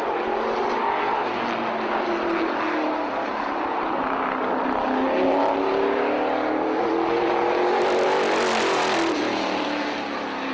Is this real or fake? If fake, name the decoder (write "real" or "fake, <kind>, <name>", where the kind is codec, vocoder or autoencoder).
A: real